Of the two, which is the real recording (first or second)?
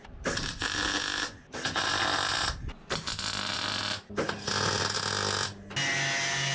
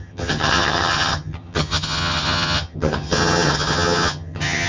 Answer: first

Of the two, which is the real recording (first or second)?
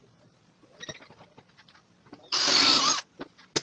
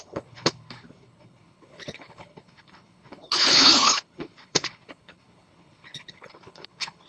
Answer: first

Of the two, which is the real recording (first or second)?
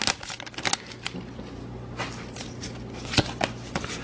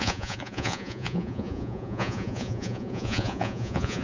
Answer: first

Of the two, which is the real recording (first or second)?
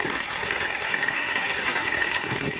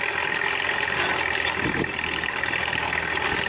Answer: second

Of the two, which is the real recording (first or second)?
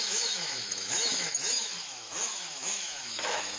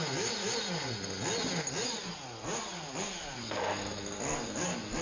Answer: second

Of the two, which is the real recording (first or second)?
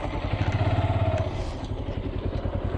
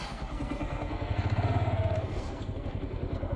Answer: first